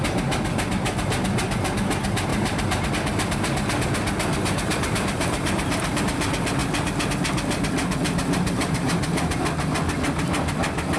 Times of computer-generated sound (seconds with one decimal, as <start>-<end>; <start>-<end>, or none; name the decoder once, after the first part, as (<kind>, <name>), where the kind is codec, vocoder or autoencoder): 2.3-2.9 (vocoder, BigVGAN v2); 4.3-6.0; 8.2-9.4